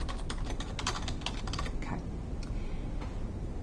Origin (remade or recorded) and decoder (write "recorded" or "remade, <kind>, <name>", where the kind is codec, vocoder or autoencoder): recorded